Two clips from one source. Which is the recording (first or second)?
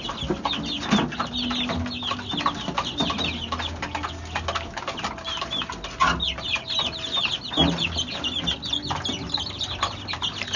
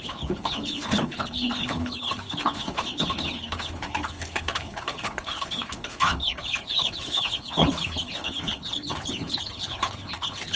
first